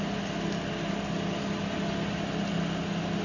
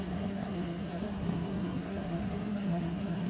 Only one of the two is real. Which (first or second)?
first